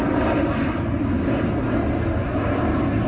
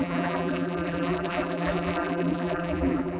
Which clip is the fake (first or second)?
second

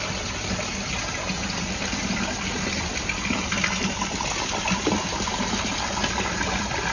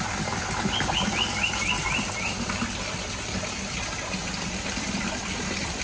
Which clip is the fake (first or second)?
second